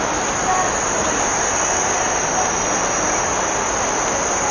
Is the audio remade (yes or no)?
no